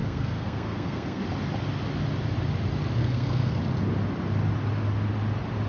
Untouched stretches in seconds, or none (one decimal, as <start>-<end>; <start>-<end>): 1.2-3.0; 3.6-5.7